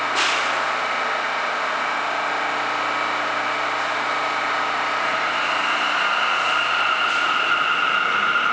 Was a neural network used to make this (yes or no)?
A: no